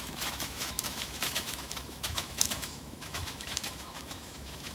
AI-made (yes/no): yes